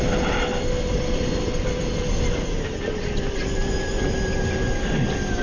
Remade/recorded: recorded